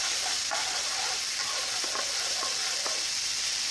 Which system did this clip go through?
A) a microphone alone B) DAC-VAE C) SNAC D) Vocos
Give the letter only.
A